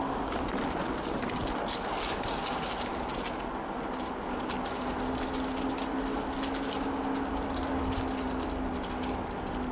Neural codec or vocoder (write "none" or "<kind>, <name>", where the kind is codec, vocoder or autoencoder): none